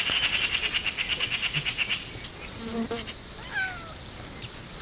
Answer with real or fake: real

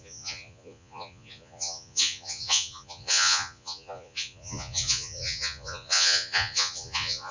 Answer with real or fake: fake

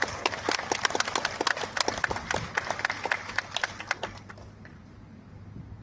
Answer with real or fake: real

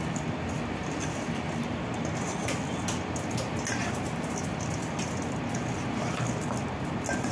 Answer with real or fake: real